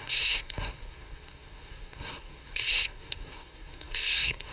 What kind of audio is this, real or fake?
fake